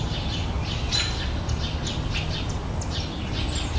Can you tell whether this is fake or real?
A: real